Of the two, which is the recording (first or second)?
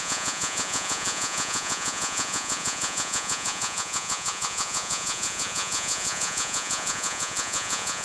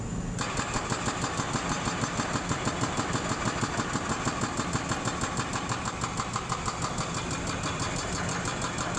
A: second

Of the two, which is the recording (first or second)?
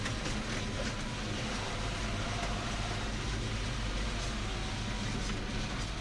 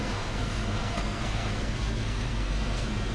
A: first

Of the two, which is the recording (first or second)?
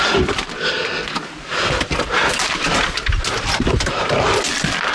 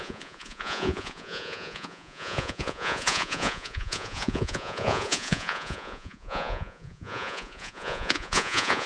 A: first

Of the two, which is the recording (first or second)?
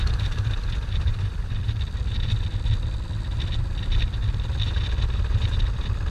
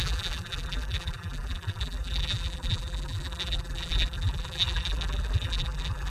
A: first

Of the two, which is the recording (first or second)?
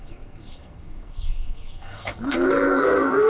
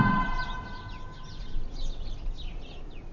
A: second